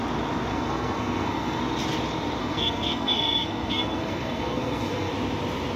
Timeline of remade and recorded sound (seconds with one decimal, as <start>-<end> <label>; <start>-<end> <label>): 0.0-0.5 recorded; 0.5-1.6 remade; 1.6-2.4 recorded; 2.4-5.1 remade; 5.1-5.8 recorded